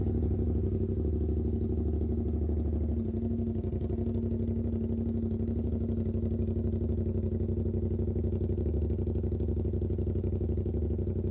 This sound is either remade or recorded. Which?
recorded